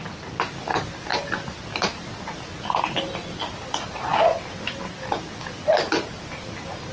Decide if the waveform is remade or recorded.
recorded